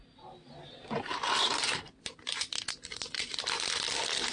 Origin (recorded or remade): recorded